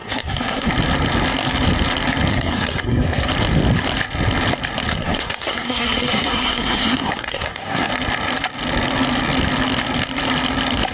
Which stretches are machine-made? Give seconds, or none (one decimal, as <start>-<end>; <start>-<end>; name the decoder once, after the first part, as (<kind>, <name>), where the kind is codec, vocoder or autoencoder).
0.0-0.7 (codec, SNAC); 2.3-3.3; 4.9-7.9